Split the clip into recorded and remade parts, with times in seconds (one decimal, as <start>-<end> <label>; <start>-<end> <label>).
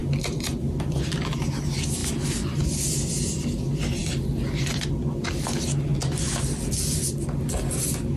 0.0-0.7 remade; 0.7-2.0 recorded; 2.0-3.1 remade; 3.1-4.0 recorded; 4.0-5.0 remade; 5.0-8.2 recorded